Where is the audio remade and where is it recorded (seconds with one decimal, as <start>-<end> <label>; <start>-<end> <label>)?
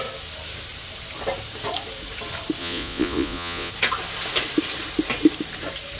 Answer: 0.0-2.6 recorded; 2.6-3.7 remade; 3.7-6.0 recorded